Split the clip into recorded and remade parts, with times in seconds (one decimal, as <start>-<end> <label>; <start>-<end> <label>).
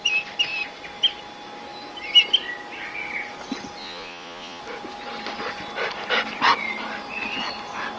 0.0-3.8 recorded; 3.8-4.6 remade; 4.6-8.0 recorded